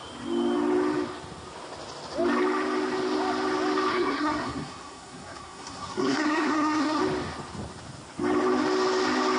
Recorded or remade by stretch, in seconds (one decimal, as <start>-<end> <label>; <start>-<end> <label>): 0.0-3.9 recorded; 3.9-7.0 remade; 7.0-9.4 recorded